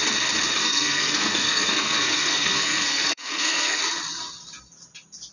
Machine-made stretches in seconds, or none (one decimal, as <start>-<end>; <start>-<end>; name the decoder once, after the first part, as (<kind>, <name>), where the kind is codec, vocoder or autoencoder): 0.6-3.8 (codec, SNAC)